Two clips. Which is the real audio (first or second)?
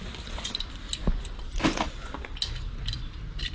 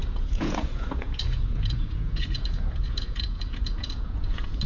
first